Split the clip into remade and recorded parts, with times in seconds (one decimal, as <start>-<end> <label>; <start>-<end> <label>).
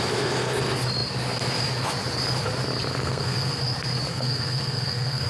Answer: 0.0-3.0 recorded; 3.0-3.6 remade; 3.6-4.1 recorded; 4.1-5.3 remade